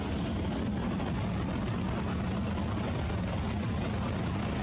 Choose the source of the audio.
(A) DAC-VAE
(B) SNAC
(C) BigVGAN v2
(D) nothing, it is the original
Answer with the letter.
D